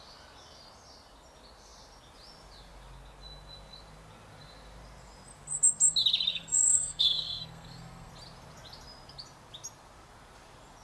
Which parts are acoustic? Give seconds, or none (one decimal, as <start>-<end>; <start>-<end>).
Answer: 0.0-6.3; 8.1-10.8